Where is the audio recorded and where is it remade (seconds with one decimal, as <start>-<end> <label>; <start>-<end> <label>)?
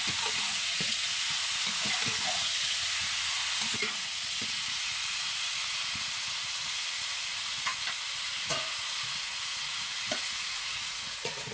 0.0-7.7 remade; 7.7-8.2 recorded; 8.2-11.5 remade